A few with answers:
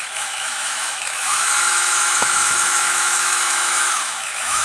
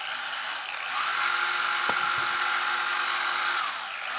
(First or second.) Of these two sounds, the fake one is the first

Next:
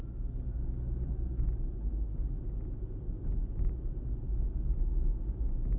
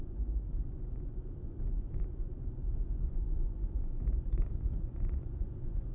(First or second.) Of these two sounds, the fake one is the second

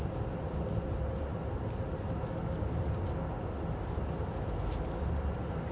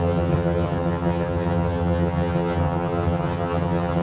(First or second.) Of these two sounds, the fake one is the second